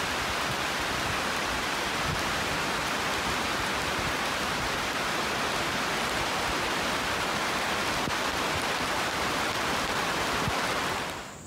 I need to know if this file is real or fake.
real